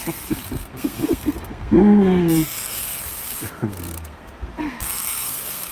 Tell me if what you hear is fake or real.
fake